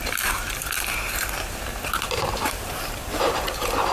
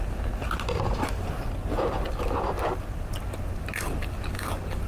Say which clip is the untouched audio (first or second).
second